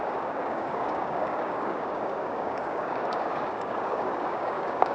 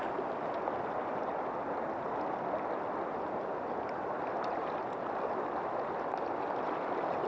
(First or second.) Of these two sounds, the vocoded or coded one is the first